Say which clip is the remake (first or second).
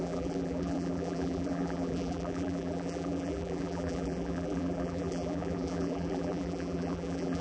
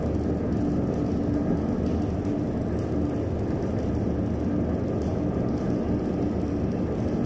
first